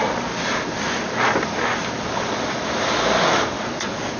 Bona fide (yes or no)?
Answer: yes